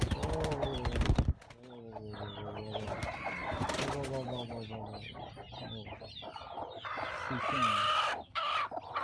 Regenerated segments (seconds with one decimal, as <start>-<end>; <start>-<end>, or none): none